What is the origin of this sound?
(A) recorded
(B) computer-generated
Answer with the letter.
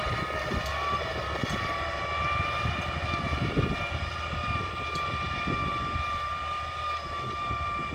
A